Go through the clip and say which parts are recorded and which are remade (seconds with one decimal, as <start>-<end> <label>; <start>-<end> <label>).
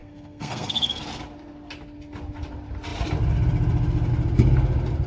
0.0-1.0 remade; 1.0-5.1 recorded